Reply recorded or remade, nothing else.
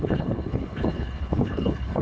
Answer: remade